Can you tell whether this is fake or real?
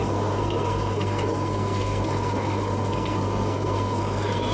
fake